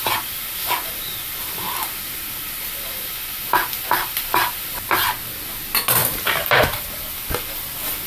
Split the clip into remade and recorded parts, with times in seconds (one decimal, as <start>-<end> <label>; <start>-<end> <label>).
0.0-6.0 recorded; 6.0-6.8 remade; 6.8-8.1 recorded